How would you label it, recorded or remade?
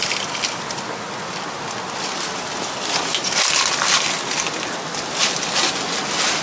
recorded